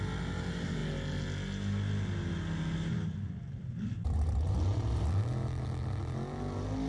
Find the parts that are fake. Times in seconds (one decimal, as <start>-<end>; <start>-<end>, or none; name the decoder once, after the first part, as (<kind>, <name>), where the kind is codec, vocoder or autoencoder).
none

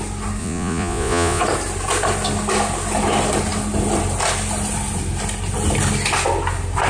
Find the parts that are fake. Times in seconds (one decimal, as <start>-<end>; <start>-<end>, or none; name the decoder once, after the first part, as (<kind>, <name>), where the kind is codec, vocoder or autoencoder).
0.4-1.4 (vocoder, Vocos)

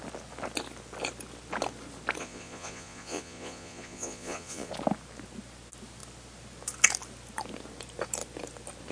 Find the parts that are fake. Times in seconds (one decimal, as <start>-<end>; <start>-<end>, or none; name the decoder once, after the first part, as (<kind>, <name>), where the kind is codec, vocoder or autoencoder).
2.2-4.7 (vocoder, Vocos)

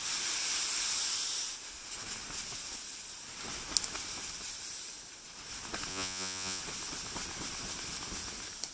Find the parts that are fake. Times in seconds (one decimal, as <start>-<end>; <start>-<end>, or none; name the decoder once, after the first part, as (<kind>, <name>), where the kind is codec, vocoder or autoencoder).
5.9-6.6 (vocoder, Vocos)

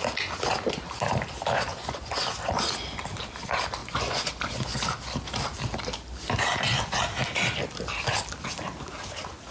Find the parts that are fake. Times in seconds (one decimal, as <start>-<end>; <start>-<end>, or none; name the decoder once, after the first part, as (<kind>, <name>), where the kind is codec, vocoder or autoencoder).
1.7-2.2 (vocoder, Vocos); 3.8-4.8

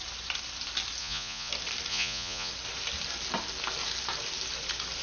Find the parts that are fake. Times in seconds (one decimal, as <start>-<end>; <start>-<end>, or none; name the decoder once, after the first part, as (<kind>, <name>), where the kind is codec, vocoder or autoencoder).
1.0-1.5 (vocoder, Vocos); 1.9-2.5

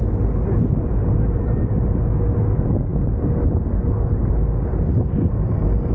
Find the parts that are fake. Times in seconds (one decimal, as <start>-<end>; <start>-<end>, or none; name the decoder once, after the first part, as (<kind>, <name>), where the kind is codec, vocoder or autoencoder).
none

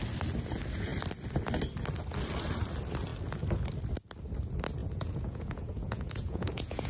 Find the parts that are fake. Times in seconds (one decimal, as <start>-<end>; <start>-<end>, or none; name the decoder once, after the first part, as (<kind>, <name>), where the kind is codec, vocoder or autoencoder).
4.8-6.9 (vocoder, Vocos)